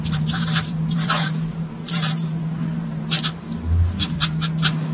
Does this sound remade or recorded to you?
remade